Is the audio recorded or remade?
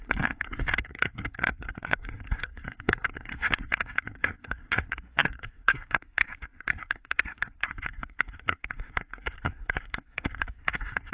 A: remade